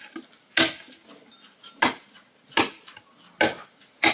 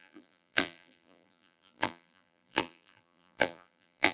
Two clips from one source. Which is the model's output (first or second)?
second